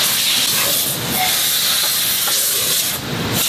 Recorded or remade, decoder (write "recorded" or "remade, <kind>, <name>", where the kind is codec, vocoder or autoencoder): recorded